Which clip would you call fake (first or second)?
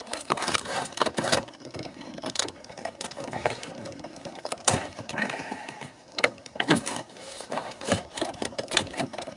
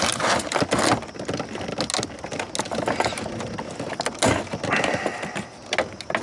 first